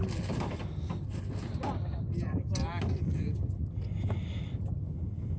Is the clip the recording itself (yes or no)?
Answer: yes